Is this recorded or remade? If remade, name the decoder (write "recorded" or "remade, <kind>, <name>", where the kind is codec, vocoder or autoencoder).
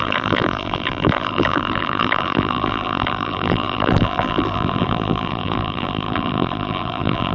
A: remade, vocoder, BigVGAN v2